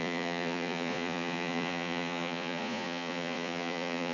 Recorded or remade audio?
remade